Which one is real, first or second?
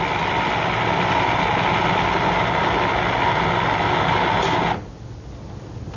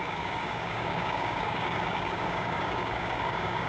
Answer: first